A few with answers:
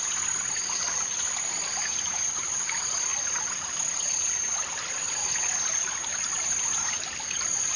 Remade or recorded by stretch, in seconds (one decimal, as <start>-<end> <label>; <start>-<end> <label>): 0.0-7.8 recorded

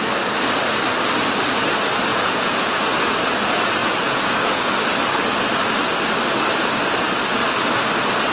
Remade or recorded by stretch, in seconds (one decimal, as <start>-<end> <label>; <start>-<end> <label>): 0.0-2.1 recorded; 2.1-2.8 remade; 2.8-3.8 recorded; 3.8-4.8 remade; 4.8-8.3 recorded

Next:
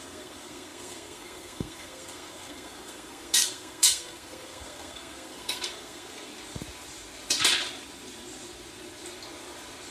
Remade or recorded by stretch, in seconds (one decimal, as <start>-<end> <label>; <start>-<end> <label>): 0.0-6.3 remade; 6.3-9.9 recorded